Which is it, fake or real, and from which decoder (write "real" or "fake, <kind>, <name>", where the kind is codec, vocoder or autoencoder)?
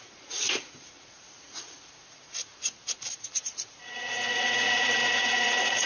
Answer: fake, vocoder, Vocos